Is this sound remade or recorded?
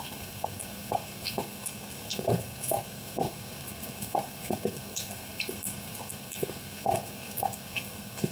remade